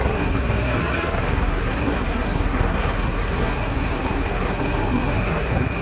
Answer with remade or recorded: remade